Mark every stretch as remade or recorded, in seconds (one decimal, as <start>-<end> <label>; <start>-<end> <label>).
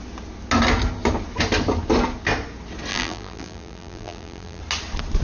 0.0-2.9 recorded; 2.9-4.6 remade; 4.6-5.2 recorded